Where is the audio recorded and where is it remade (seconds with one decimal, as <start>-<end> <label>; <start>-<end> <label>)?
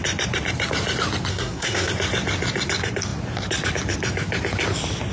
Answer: 0.0-1.3 recorded; 1.3-1.9 remade; 1.9-5.1 recorded